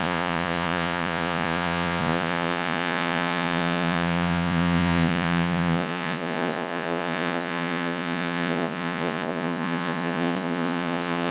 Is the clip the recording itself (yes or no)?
no